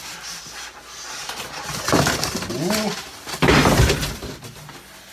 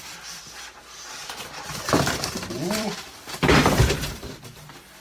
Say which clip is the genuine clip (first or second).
first